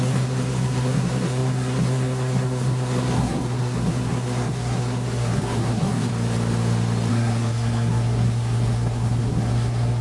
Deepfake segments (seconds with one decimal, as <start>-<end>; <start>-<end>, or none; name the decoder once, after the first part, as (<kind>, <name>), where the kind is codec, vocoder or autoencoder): 0.0-6.1 (codec, SNAC); 7.1-10.0